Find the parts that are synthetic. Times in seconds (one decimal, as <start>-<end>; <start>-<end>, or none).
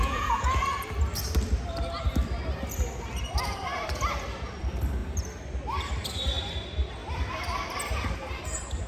0.0-0.6